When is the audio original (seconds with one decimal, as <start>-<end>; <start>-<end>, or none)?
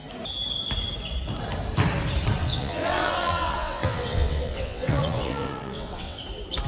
0.0-2.4; 6.2-6.7